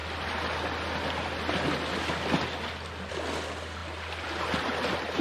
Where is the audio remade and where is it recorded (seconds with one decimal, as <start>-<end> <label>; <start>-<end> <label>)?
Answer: 0.0-5.2 recorded